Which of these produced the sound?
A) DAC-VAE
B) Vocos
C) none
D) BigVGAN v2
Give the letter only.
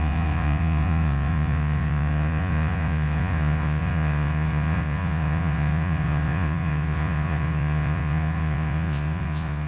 B